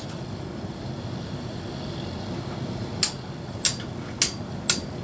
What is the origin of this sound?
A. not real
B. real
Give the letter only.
B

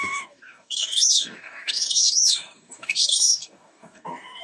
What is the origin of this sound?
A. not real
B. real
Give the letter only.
A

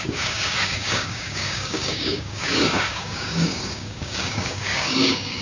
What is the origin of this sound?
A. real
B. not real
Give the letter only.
B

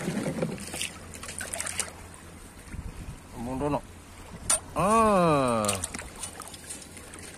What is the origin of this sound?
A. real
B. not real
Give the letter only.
A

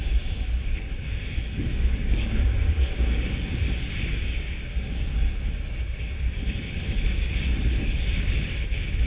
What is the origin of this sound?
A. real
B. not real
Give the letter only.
B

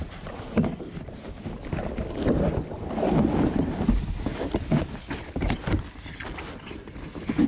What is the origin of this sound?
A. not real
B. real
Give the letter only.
B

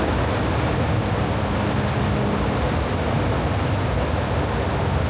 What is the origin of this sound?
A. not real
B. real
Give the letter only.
B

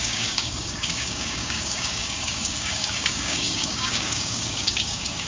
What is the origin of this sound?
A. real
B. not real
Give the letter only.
B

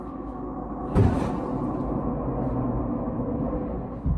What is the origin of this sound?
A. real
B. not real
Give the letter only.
A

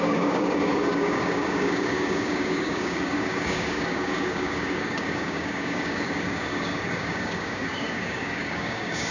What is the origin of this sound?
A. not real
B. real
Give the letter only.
A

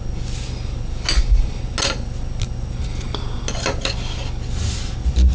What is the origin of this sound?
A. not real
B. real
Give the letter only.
B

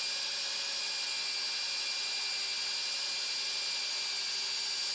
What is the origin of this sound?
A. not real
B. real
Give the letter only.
B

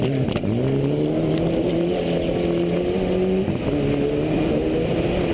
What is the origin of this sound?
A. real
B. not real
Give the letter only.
A